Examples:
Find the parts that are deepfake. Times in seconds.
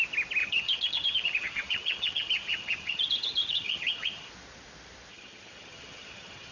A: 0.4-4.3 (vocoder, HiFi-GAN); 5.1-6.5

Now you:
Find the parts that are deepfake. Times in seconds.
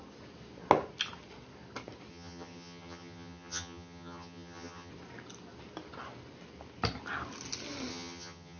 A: 2.1-4.9 (vocoder, HiFi-GAN); 7.9-8.6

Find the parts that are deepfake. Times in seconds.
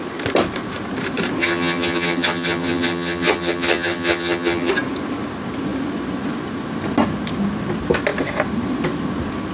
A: 1.4-4.7 (vocoder, HiFi-GAN)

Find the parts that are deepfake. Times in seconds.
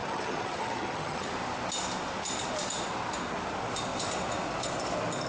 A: 0.0-1.3 (vocoder, HiFi-GAN)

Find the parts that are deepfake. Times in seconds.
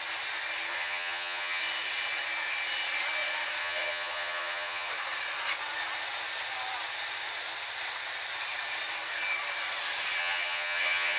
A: 0.7-1.6 (vocoder, HiFi-GAN); 3.6-4.9; 10.2-11.2